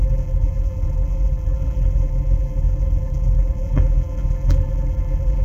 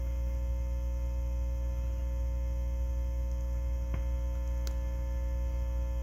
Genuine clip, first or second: second